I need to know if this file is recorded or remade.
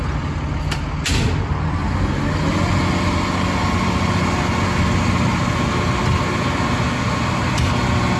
recorded